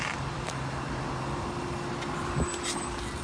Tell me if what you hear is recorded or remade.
recorded